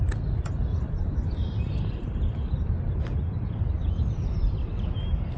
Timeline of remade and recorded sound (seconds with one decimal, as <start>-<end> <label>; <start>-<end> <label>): 0.0-0.7 recorded; 0.7-3.9 remade; 3.9-5.4 recorded